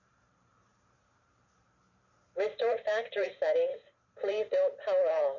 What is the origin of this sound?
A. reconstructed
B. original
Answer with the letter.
A